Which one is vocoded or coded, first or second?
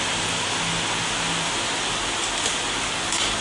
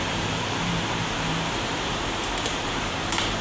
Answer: second